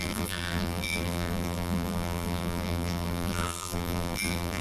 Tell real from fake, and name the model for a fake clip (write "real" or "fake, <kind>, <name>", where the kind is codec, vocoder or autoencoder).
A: fake, vocoder, BigVGAN v2